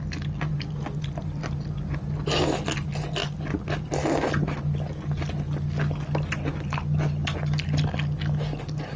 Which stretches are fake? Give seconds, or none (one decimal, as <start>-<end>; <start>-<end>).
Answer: none